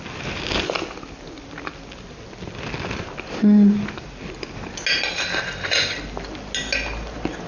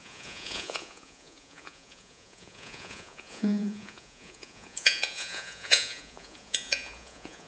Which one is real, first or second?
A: first